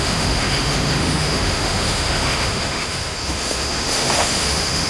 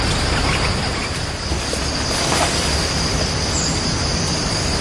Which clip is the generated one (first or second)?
first